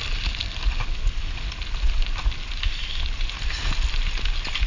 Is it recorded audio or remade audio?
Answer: recorded